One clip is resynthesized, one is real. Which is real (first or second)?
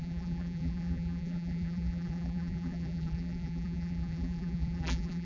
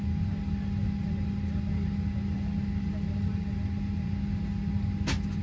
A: second